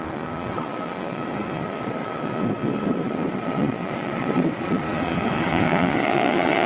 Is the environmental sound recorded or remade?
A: remade